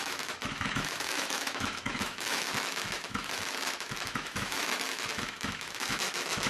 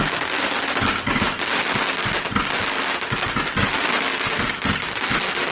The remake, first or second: first